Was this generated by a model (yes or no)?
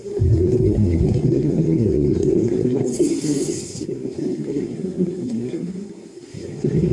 yes